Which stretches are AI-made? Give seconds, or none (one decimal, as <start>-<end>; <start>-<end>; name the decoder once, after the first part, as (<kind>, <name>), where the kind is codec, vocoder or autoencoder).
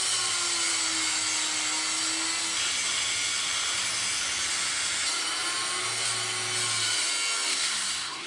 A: 7.5-8.3 (codec, SNAC)